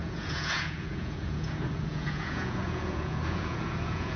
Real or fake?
fake